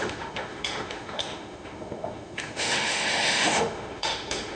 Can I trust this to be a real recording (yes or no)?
no